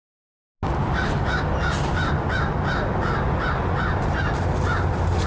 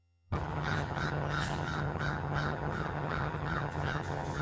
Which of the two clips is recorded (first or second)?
first